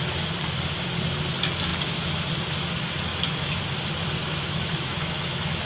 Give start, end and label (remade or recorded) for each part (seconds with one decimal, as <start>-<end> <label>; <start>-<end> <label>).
0.0-3.1 recorded; 3.1-3.6 remade; 3.6-4.2 recorded; 4.2-5.7 remade